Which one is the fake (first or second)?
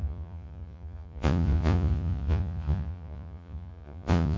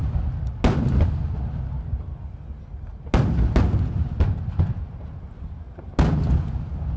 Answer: first